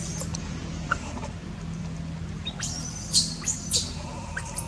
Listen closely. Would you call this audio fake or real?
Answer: fake